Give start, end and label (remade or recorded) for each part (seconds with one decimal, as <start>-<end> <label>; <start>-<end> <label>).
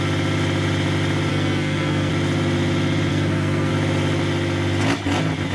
0.0-1.3 recorded; 1.3-2.1 remade; 2.1-3.1 recorded; 3.1-3.7 remade; 3.7-5.5 recorded